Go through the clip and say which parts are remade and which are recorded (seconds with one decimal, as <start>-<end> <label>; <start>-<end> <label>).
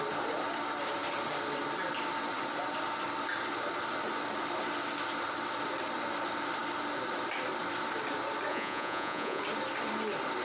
0.0-8.5 recorded; 8.5-9.4 remade; 9.4-10.4 recorded